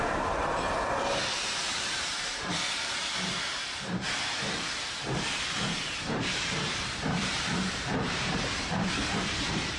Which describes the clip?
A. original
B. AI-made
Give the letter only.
B